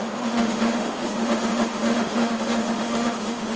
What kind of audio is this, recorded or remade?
remade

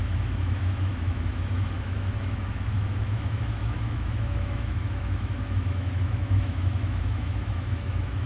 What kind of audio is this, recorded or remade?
remade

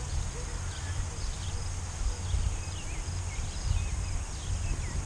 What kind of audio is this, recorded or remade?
recorded